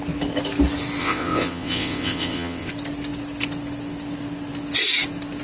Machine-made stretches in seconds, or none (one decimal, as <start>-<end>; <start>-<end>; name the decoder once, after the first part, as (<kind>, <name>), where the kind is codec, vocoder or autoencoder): 1.0-2.7 (vocoder, WaveNeXt)

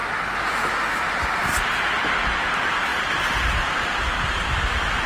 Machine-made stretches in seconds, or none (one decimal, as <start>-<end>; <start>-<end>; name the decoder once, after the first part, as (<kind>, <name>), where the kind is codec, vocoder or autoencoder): 0.0-2.1 (vocoder, BigVGAN v2); 2.9-3.6

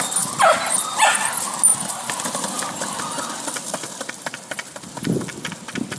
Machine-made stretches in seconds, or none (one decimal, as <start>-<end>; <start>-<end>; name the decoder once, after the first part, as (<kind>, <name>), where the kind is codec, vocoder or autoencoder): 1.7-4.9 (vocoder, BigVGAN v2)

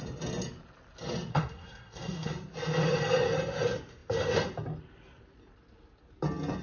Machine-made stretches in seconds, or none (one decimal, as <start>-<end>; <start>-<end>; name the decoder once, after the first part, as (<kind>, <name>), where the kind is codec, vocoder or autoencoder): 1.3-2.3 (codec, SNAC)

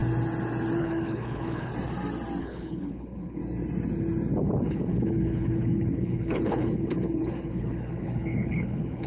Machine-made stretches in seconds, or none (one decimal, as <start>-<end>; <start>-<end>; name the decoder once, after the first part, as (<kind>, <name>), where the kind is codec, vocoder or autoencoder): 0.8-1.7 (codec, HILCodec); 2.4-3.4; 4.4-9.1

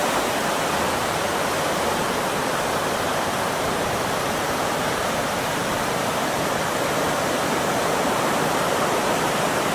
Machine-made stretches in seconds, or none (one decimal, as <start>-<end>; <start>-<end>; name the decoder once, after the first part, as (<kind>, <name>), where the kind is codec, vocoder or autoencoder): 2.0-9.7 (vocoder, BigVGAN v2)